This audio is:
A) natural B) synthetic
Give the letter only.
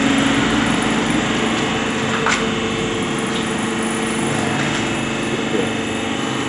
A